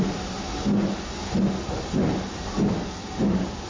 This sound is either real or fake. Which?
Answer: real